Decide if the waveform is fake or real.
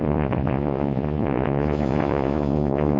fake